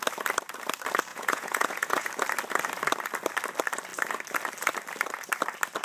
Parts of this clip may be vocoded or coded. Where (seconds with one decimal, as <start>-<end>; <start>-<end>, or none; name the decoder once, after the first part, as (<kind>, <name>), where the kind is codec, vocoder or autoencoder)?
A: 1.1-2.1 (vocoder, Vocos)